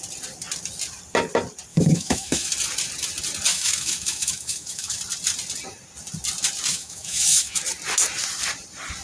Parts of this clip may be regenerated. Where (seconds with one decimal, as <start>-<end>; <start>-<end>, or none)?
1.7-2.5; 3.5-5.0; 6.7-7.6